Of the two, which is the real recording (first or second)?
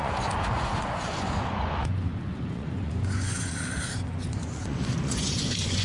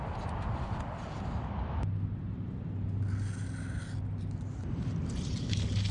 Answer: second